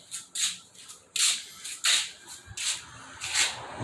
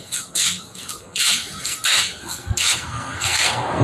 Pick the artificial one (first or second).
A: second